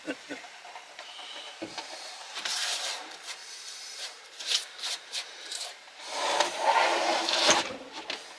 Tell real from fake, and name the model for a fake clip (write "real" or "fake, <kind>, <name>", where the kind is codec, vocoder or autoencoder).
fake, vocoder, BigVGAN v2